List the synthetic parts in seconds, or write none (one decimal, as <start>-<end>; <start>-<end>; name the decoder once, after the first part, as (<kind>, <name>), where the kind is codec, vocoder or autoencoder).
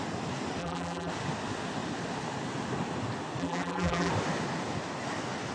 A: 0.6-1.1 (vocoder, BigVGAN v2); 3.4-4.1